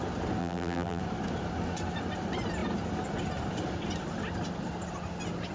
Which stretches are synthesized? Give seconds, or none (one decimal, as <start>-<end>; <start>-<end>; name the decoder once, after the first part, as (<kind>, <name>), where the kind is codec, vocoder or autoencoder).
0.4-1.0 (vocoder, BigVGAN v2)